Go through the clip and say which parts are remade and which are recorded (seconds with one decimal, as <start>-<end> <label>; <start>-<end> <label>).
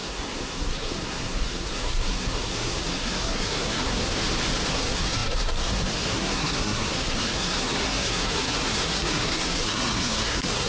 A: 0.0-4.1 remade; 4.1-4.7 recorded; 4.7-10.7 remade